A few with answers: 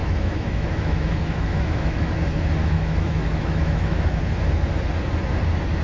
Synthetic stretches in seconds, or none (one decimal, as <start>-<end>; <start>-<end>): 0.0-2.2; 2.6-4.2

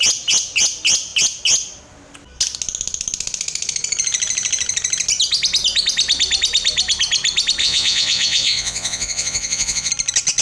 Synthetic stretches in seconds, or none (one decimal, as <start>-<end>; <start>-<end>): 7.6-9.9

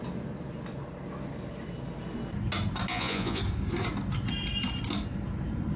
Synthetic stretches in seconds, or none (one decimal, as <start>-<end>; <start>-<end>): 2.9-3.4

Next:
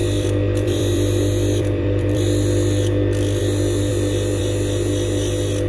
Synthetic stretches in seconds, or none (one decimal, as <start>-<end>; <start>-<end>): 0.0-3.4